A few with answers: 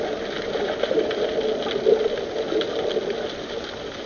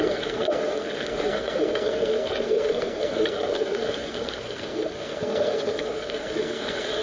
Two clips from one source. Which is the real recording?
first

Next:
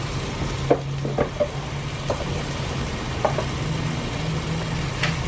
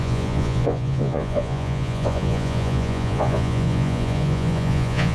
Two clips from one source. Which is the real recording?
first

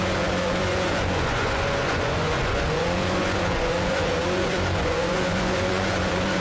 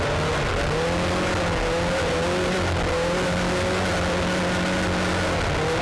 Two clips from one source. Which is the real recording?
second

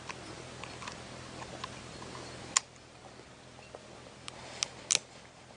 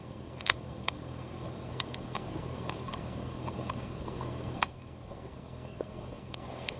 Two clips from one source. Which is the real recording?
first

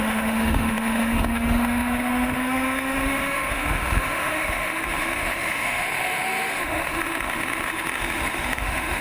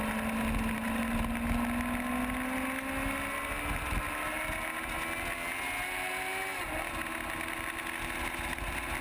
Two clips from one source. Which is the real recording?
second